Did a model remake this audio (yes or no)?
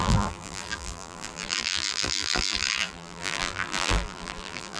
yes